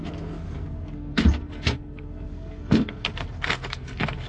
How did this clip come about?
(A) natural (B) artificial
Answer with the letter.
B